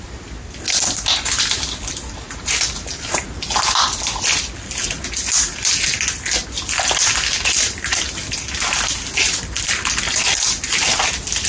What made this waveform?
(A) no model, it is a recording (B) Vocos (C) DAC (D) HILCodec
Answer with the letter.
A